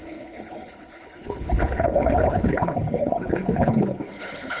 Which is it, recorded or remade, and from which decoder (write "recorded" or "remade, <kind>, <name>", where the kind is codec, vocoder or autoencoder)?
remade, codec, HILCodec